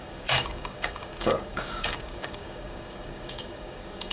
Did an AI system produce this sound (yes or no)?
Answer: yes